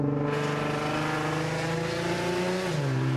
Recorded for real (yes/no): yes